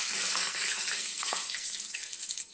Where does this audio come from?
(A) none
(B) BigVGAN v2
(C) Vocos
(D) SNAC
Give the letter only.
D